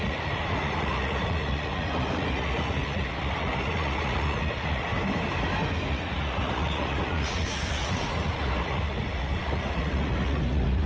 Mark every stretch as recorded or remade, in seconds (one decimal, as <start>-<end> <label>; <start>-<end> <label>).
0.0-4.9 remade; 4.9-5.9 recorded; 5.9-10.9 remade